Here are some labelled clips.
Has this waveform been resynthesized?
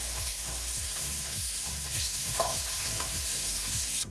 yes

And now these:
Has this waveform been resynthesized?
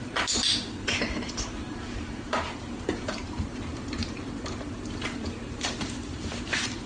yes